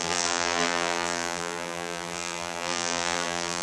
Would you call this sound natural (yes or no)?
no